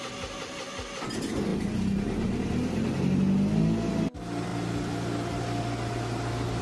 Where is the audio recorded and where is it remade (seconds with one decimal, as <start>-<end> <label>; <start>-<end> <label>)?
0.0-6.6 recorded